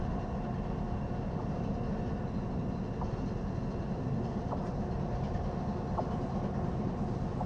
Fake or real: real